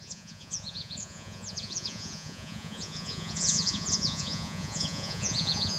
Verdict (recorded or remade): remade